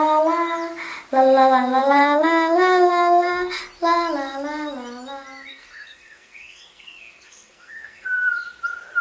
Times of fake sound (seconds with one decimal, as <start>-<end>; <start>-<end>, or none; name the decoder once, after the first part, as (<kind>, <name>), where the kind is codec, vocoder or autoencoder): 1.8-3.6 (codec, SNAC); 5.5-8.3